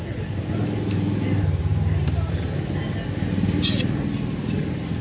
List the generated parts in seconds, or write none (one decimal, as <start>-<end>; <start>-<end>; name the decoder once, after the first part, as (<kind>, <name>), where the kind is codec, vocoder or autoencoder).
none